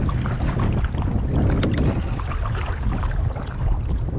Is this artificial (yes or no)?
no